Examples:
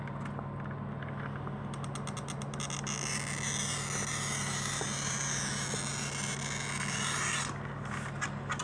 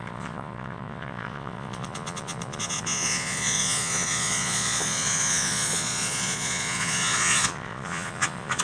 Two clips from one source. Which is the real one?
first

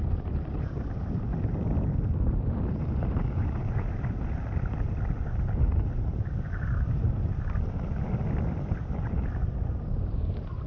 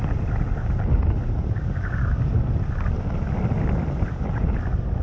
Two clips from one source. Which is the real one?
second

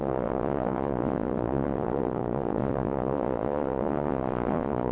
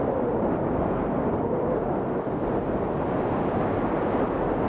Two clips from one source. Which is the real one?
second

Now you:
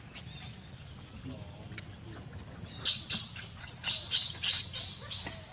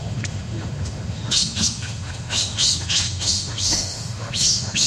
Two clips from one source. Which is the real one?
first